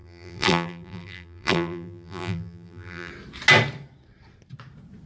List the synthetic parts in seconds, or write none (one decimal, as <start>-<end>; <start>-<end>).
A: 0.0-3.1